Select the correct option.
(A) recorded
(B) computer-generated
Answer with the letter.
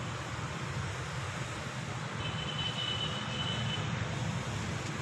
A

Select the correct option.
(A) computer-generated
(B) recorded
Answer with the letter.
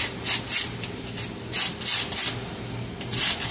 B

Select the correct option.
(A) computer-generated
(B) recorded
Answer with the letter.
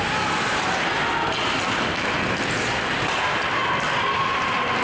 B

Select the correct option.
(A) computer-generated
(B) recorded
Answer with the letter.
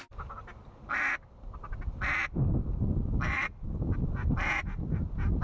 B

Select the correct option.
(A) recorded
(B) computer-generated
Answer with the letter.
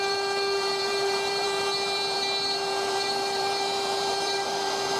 B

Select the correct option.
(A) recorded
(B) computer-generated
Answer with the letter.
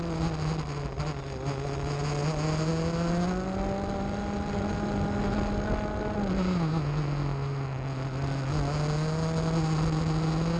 A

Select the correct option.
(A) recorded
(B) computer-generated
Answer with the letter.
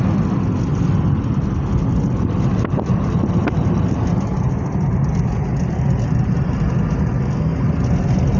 A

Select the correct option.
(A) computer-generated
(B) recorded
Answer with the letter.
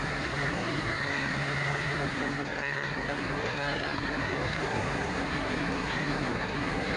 A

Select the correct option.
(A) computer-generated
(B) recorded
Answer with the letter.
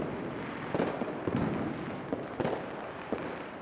B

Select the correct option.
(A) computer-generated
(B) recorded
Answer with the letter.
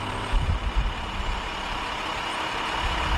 B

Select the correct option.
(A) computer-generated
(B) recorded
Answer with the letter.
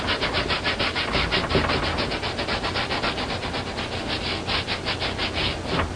B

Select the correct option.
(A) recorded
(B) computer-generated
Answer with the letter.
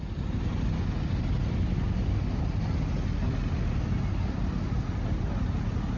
A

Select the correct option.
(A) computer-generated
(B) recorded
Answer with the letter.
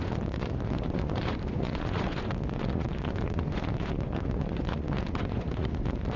A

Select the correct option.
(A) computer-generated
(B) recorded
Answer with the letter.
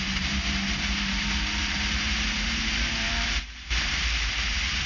A